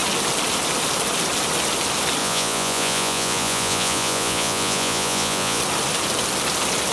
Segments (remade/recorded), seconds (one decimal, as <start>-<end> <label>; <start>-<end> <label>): 0.0-2.2 recorded; 2.2-5.6 remade; 5.6-6.9 recorded